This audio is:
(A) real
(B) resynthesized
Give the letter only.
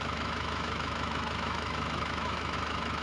B